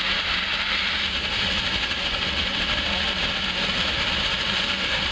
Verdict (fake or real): real